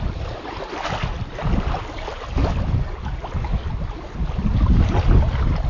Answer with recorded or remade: recorded